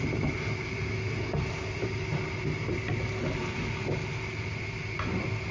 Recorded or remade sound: recorded